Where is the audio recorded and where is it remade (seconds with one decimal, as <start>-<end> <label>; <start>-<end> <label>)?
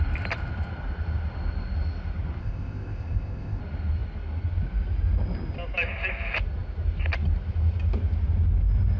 0.0-2.4 recorded; 2.4-3.6 remade; 3.6-9.0 recorded